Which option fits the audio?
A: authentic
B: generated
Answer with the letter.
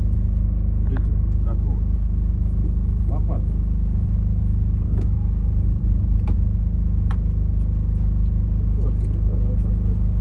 A